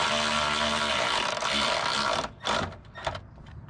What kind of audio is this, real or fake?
real